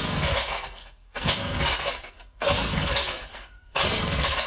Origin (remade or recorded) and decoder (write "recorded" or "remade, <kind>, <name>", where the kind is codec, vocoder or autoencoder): remade, codec, SNAC